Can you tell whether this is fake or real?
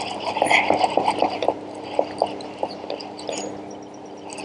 real